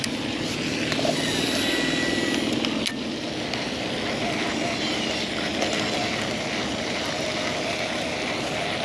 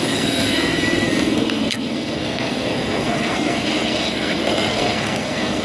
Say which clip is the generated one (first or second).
second